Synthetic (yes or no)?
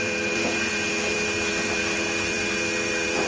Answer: yes